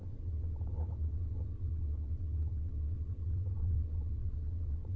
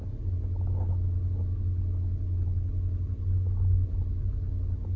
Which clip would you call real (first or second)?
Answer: second